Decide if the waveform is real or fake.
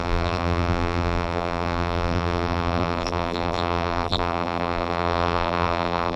fake